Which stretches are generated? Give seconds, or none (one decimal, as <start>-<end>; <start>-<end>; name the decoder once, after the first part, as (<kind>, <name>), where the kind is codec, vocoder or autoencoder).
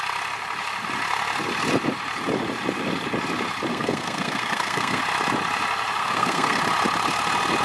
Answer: 3.7-5.0 (codec, SNAC); 6.0-6.6